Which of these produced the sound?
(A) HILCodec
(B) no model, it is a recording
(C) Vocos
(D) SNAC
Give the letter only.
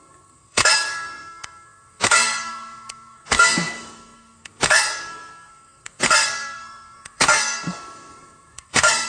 D